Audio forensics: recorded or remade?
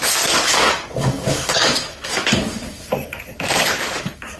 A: remade